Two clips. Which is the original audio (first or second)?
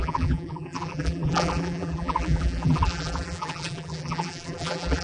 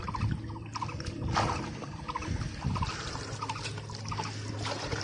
second